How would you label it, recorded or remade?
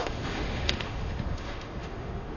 remade